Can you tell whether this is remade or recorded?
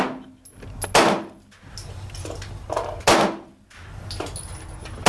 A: recorded